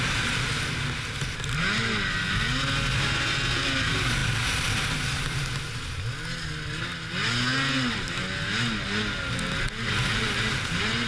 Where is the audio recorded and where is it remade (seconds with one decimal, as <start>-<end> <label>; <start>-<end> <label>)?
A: 0.0-11.1 recorded